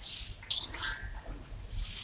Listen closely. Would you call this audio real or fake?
real